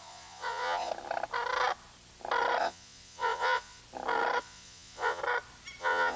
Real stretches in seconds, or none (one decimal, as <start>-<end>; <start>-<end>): 0.9-2.6; 3.8-4.4; 5.2-5.8